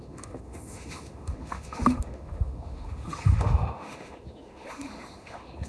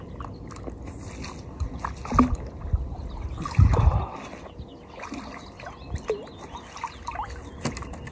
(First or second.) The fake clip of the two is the first